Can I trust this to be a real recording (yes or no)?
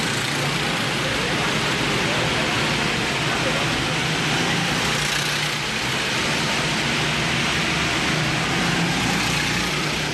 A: yes